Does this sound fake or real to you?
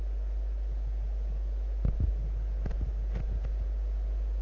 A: real